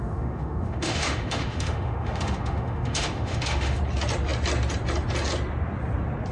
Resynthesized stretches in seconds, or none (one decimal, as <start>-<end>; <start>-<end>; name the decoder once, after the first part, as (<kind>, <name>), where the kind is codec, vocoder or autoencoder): 0.0-3.8 (autoencoder, DAC-VAE)